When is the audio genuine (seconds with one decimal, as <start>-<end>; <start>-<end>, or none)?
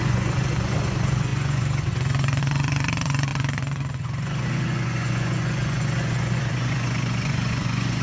none